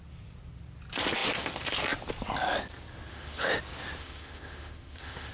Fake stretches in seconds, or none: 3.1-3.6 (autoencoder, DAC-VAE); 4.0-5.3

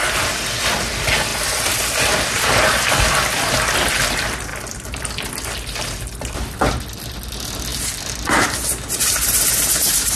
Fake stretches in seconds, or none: none

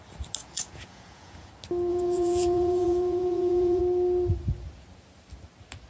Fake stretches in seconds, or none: 0.4-1.5 (vocoder, Vocos); 1.9-3.8

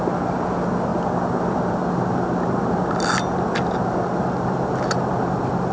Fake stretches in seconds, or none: none

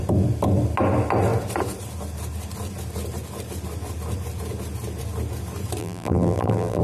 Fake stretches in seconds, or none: 5.8-6.8 (vocoder, BigVGAN v2)

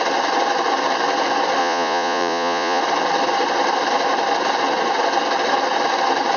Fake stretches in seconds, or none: 1.6-2.8 (vocoder, Vocos)

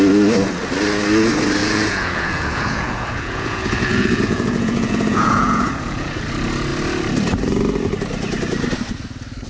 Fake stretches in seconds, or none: 1.6-6.2 (vocoder, Vocos)

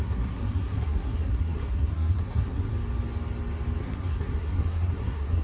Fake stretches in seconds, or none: 0.0-2.7 (codec, SNAC); 3.8-5.4